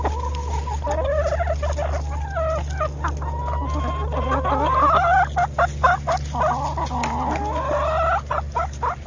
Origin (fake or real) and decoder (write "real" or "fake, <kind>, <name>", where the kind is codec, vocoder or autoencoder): real